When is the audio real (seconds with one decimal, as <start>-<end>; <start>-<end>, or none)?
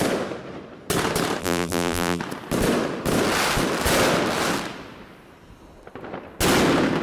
0.0-1.4; 2.2-7.0